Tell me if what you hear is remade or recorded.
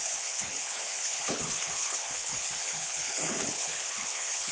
remade